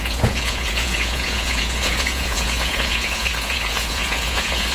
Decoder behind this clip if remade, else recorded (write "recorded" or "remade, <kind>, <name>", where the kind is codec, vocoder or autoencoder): remade, vocoder, Vocos